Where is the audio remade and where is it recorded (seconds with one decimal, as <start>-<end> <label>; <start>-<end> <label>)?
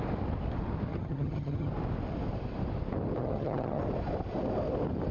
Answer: 0.0-0.9 recorded; 0.9-1.7 remade; 1.7-3.2 recorded; 3.2-3.8 remade; 3.8-5.1 recorded